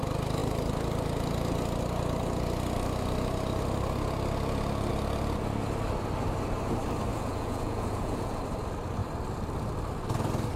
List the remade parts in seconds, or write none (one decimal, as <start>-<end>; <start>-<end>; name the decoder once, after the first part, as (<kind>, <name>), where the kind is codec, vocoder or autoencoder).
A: 7.1-8.4 (vocoder, Vocos)